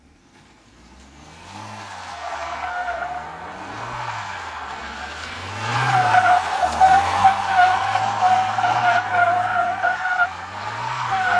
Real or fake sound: fake